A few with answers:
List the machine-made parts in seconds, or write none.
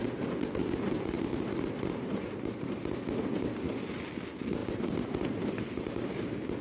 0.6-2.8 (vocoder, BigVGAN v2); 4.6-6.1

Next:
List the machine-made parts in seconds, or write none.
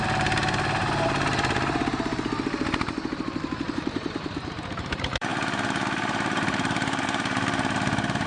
0.0-8.3 (vocoder, BigVGAN v2)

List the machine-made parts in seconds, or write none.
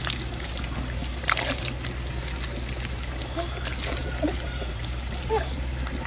4.0-6.1 (vocoder, BigVGAN v2)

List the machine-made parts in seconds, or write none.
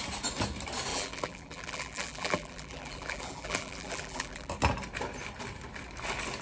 0.9-4.5 (vocoder, BigVGAN v2)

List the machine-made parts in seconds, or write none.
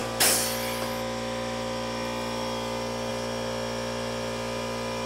none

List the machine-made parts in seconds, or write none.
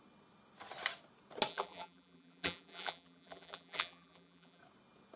1.5-4.6 (vocoder, BigVGAN v2)